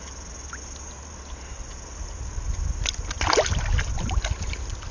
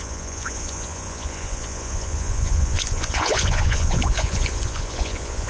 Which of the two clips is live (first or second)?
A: first